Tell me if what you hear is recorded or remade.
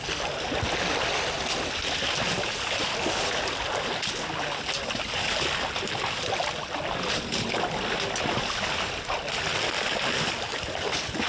recorded